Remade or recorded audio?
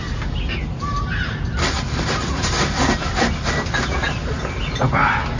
recorded